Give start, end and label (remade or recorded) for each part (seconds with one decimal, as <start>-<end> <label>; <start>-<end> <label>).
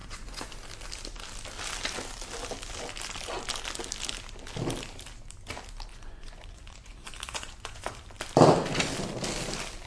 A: 0.0-0.5 remade; 0.5-5.9 recorded; 5.9-8.0 remade; 8.0-9.9 recorded